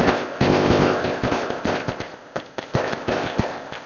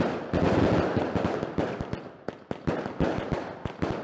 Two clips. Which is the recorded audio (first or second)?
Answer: second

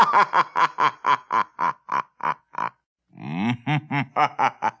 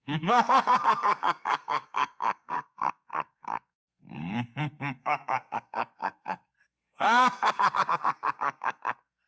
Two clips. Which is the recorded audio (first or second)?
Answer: first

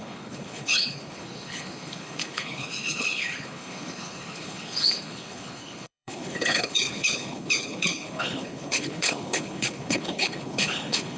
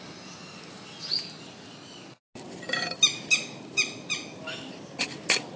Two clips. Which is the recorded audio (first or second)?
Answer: second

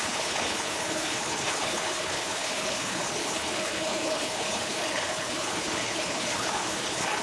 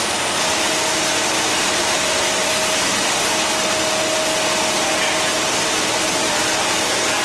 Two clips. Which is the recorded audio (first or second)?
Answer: second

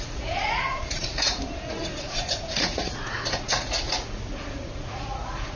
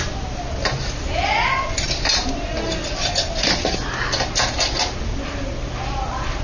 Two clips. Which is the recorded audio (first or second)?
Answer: second